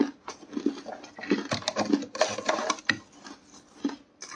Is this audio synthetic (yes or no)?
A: no